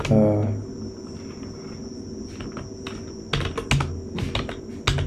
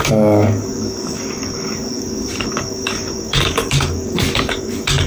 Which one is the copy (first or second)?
second